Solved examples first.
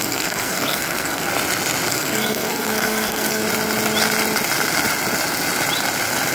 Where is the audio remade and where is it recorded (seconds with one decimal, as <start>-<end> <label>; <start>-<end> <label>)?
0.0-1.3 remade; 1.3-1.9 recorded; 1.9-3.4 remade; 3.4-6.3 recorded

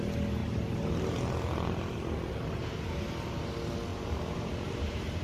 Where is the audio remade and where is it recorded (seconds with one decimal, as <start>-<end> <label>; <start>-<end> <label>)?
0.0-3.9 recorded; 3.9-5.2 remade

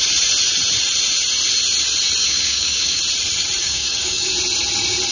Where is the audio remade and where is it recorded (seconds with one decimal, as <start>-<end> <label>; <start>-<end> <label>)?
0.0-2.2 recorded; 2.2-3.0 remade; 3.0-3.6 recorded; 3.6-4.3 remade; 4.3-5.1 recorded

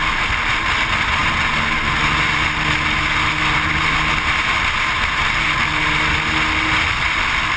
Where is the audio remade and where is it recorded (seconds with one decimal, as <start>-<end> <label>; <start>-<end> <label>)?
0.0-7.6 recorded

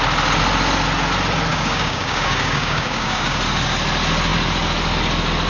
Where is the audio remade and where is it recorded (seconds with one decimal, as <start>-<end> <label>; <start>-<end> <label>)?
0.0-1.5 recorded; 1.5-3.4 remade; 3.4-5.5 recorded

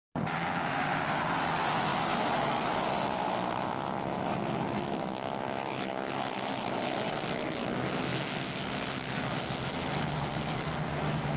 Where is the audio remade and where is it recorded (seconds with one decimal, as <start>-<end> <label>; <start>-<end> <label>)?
0.0-11.4 recorded

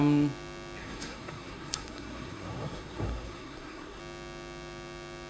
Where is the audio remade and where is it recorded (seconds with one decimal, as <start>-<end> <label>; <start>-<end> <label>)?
0.0-0.8 recorded; 0.8-4.0 remade; 4.0-5.3 recorded

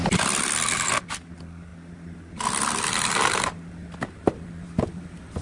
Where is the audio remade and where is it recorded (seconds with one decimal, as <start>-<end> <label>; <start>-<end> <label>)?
0.0-5.4 recorded